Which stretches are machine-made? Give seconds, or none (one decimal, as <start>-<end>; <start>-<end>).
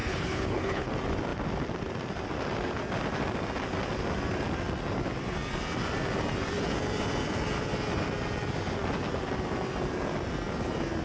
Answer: 0.0-0.9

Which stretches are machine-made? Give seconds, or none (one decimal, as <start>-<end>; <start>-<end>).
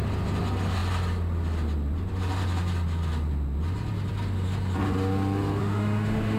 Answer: 5.6-6.4